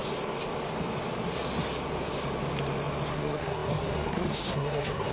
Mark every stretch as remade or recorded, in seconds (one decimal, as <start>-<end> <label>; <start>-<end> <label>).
0.0-3.1 recorded; 3.1-5.1 remade